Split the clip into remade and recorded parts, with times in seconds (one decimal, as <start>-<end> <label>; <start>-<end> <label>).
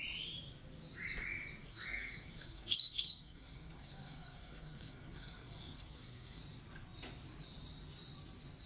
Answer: 0.0-1.6 recorded; 1.6-6.4 remade; 6.4-8.7 recorded